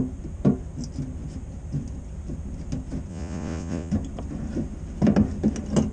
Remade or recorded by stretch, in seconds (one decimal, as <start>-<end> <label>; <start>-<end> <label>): 0.0-3.1 recorded; 3.1-3.9 remade; 3.9-5.9 recorded